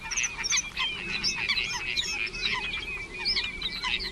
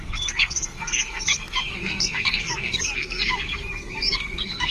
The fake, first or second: second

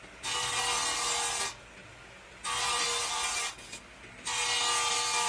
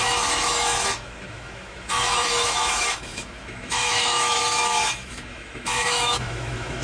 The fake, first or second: second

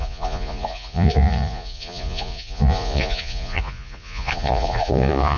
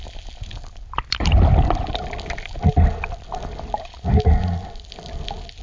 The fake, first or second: first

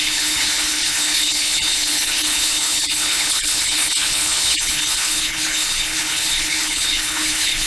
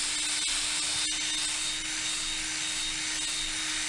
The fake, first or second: first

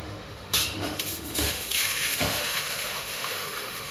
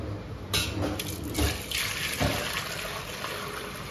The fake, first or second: first